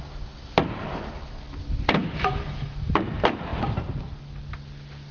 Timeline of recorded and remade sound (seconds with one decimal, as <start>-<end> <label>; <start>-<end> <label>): 0.0-2.0 recorded; 2.0-2.9 remade; 2.9-5.1 recorded